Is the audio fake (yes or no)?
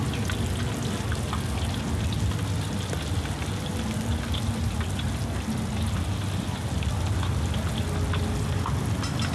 no